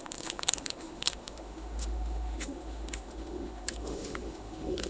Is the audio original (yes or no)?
no